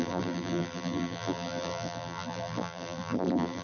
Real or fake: fake